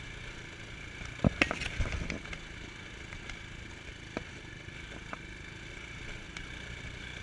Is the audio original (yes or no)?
yes